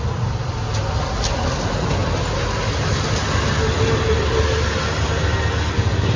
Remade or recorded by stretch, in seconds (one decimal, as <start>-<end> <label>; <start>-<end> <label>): 0.0-6.2 recorded